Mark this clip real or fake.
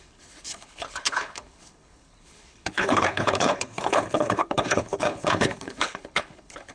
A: fake